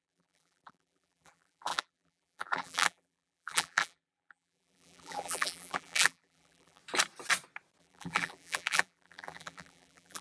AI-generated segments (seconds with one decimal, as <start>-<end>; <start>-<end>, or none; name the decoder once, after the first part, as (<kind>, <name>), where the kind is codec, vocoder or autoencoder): 0.0-6.8 (vocoder, BigVGAN v2); 7.8-10.2